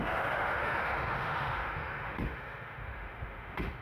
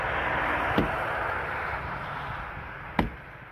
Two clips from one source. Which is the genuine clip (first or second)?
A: second